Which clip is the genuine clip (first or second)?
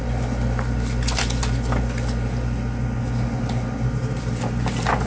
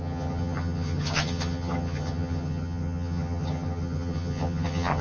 first